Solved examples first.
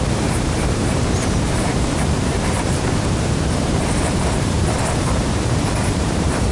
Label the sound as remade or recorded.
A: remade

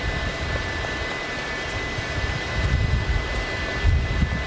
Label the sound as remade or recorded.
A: recorded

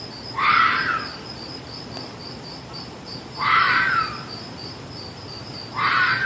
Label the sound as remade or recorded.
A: remade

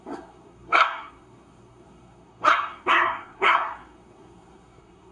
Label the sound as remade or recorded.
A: remade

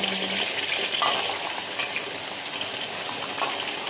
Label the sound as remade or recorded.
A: recorded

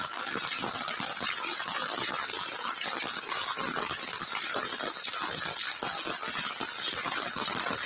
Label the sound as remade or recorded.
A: recorded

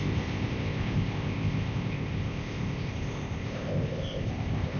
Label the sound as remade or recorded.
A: remade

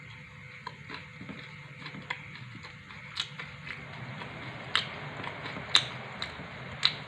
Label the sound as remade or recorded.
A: recorded